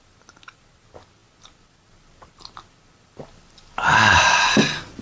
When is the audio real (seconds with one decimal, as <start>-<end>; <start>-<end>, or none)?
0.0-5.0

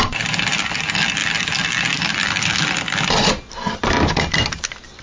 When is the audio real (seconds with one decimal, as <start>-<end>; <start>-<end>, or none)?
0.0-5.0

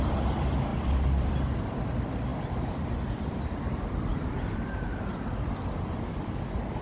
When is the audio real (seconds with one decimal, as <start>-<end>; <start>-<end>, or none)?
0.0-0.7; 1.3-4.1; 5.1-6.8

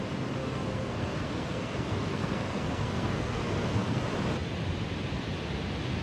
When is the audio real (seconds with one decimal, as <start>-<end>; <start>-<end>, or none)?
0.0-0.4; 4.0-6.0

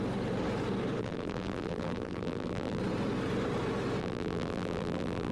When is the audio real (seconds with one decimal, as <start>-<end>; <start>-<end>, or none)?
0.0-1.0; 2.8-4.0

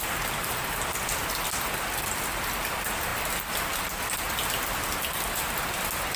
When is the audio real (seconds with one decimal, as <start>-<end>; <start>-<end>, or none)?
0.0-6.2